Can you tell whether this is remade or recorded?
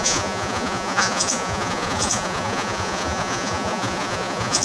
remade